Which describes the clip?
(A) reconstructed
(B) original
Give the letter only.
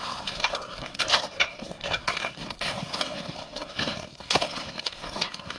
A